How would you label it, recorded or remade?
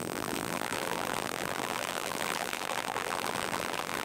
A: remade